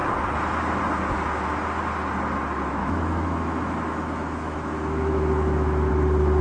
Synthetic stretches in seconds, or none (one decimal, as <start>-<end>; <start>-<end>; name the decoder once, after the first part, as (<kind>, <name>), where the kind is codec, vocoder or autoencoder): 2.8-5.9 (autoencoder, DAC-VAE)